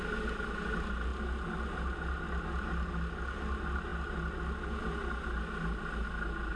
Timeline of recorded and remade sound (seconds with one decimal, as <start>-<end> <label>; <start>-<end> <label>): 0.0-6.6 recorded

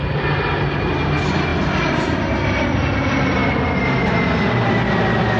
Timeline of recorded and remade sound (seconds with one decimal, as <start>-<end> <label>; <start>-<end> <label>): 0.0-5.4 recorded

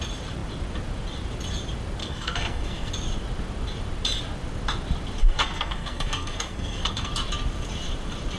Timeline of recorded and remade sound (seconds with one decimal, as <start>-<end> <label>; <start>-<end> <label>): 0.0-2.0 recorded; 2.0-2.9 remade; 2.9-5.2 recorded; 5.2-7.1 remade; 7.1-8.4 recorded

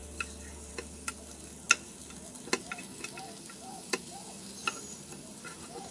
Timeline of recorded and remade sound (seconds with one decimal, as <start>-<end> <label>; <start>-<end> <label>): 0.0-5.9 recorded